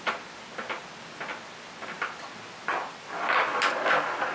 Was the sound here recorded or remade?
recorded